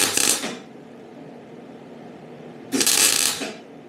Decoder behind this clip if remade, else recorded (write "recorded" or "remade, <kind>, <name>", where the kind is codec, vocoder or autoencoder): remade, vocoder, BigVGAN v2